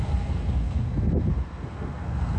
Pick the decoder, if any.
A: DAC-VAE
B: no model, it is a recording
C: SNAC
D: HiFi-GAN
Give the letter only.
C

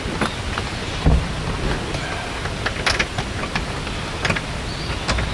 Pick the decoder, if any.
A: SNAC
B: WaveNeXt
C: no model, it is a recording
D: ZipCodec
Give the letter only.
C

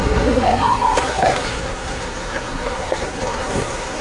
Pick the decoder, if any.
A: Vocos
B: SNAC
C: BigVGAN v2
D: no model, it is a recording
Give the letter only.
B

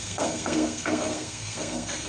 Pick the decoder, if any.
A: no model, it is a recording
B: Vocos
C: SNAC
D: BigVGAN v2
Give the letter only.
C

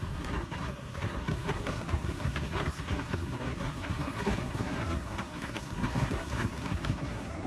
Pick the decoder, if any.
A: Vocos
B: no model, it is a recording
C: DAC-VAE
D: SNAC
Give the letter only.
D